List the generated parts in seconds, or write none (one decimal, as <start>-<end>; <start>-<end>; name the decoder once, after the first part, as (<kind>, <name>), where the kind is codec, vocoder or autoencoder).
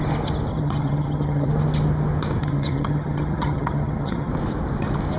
0.5-1.5 (vocoder, HiFi-GAN); 2.4-4.3